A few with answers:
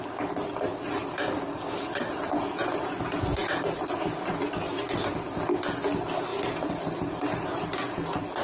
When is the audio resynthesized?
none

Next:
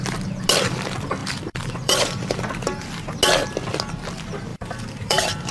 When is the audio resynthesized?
1.2-2.4 (vocoder, BigVGAN v2); 4.5-5.5